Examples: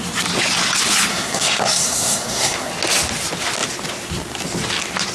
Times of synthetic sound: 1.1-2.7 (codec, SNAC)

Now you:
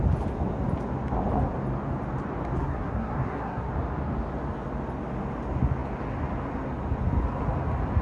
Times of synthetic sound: 2.6-3.7 (codec, SNAC)

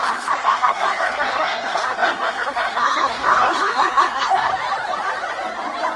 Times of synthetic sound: 0.0-4.5 (codec, SNAC)

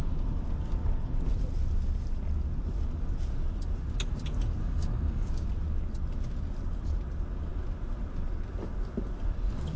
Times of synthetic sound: 4.6-5.3 (codec, SNAC)

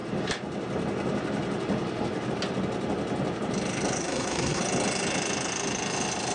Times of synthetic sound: 4.0-4.6 (codec, SNAC)

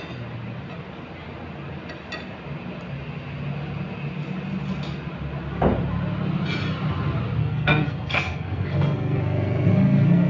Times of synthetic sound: 7.4-10.3 (codec, SNAC)

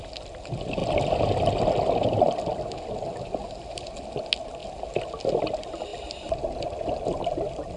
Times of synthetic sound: none